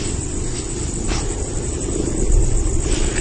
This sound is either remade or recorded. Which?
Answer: recorded